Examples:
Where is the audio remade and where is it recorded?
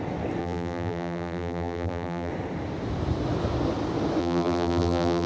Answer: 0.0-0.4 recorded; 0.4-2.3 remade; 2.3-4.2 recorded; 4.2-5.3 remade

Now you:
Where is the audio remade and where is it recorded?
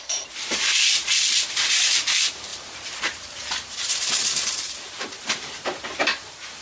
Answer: 0.0-6.6 remade